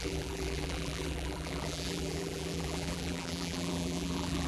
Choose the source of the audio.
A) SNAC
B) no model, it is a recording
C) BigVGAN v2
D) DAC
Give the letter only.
C